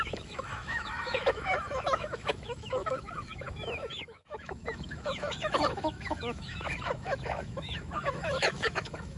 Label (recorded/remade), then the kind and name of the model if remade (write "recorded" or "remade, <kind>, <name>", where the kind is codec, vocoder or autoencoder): remade, autoencoder, DAC-VAE